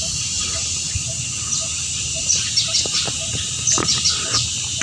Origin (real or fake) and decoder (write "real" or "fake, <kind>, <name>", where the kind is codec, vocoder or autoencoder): real